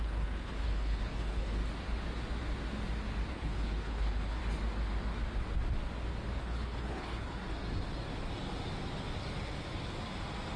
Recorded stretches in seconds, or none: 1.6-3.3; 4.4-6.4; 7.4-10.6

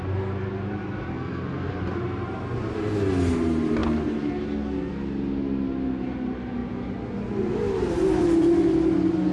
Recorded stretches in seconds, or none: 0.0-1.1; 1.7-9.3

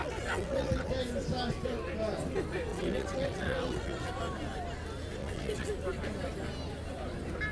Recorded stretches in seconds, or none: 0.9-2.7; 4.1-5.2; 5.7-7.5